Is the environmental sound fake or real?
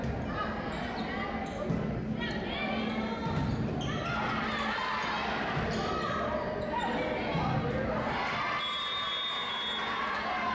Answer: real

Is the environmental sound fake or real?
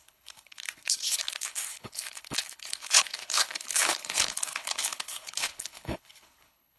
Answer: fake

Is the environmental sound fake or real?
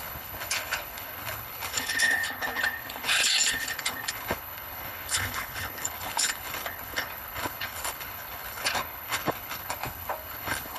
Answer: fake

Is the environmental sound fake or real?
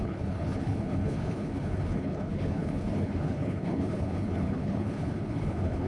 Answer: fake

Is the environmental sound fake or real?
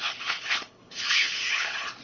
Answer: fake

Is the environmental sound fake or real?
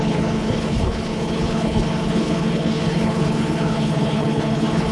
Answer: fake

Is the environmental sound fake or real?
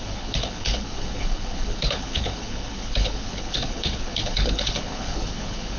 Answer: fake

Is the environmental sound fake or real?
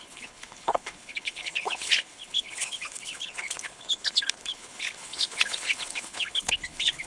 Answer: fake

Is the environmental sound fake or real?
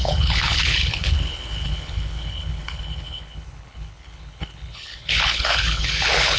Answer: fake